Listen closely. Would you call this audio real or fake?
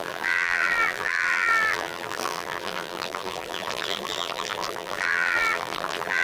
fake